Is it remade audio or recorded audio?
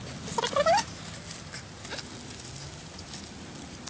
recorded